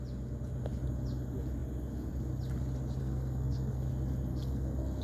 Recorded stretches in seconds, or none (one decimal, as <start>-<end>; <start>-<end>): 0.0-3.0; 3.9-4.3